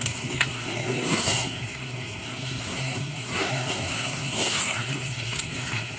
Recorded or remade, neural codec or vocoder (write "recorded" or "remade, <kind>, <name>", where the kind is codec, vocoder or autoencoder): remade, codec, SNAC